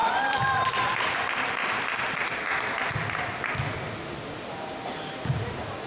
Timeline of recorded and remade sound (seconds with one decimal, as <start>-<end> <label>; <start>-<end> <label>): 0.0-3.5 remade; 3.5-5.9 recorded